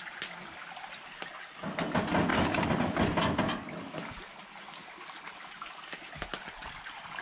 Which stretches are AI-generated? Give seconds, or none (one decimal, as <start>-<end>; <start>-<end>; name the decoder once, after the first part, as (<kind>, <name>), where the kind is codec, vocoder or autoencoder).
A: none